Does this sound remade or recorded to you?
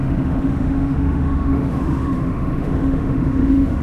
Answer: remade